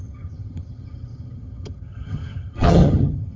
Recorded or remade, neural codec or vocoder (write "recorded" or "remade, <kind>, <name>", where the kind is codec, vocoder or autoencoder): remade, vocoder, HiFi-GAN